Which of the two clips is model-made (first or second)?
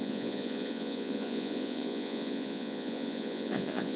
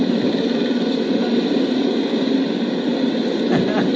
first